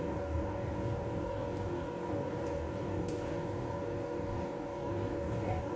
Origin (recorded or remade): remade